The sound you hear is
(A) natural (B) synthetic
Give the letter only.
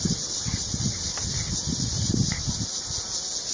A